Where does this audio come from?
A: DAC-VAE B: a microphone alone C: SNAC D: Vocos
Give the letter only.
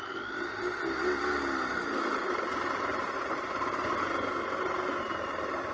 B